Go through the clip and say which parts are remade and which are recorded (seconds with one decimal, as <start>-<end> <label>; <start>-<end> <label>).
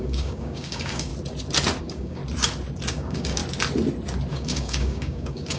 0.0-1.1 remade; 1.1-1.8 recorded; 1.8-2.2 remade; 2.2-2.9 recorded; 2.9-3.4 remade; 3.4-4.3 recorded; 4.3-5.6 remade